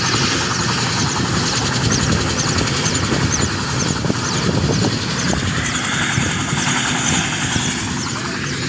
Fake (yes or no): no